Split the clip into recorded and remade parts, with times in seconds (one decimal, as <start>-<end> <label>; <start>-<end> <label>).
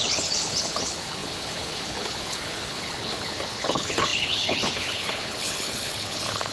0.0-6.5 remade